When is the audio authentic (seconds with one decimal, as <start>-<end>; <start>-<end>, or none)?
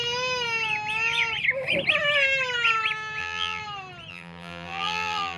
0.0-3.2; 3.6-4.1